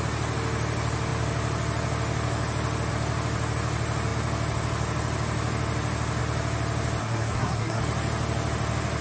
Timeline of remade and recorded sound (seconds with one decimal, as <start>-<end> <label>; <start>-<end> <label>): 0.0-7.0 recorded; 7.0-7.8 remade; 7.8-9.0 recorded